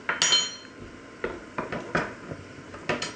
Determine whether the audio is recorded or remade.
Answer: recorded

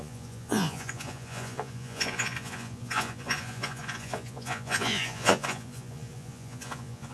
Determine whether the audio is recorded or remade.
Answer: remade